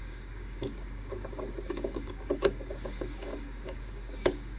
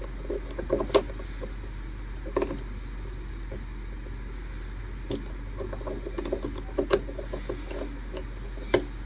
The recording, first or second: second